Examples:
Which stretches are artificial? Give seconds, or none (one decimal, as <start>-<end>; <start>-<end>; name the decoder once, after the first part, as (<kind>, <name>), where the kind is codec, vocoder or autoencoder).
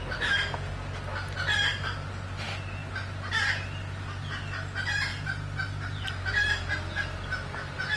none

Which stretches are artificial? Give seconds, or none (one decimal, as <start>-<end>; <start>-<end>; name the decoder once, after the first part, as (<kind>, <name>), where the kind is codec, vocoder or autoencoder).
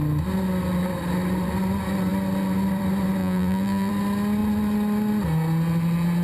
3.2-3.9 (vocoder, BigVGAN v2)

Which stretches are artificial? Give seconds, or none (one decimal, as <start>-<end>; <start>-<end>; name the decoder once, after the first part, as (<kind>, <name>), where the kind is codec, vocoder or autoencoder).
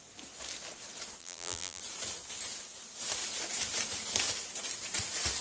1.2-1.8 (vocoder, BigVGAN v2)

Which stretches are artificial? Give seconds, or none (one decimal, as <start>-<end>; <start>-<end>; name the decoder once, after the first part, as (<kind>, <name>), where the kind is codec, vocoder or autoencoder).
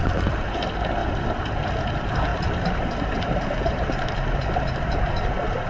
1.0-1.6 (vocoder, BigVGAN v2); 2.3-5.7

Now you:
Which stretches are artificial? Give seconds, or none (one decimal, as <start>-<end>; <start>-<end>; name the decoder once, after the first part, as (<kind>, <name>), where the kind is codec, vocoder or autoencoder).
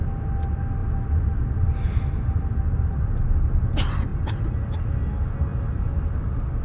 4.1-4.7 (vocoder, BigVGAN v2)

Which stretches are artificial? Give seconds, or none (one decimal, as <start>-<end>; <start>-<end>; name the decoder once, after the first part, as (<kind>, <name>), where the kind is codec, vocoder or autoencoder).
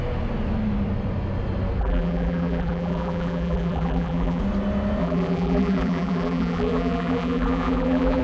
1.8-4.4 (vocoder, BigVGAN v2); 5.0-8.2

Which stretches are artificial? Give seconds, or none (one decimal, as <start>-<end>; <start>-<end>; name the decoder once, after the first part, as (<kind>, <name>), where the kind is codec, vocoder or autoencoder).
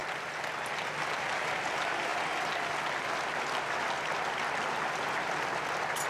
0.0-0.6 (vocoder, BigVGAN v2)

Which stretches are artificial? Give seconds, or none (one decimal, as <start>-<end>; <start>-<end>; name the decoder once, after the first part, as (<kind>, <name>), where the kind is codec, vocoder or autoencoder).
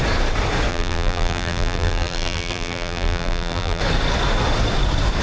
0.7-3.8 (vocoder, BigVGAN v2)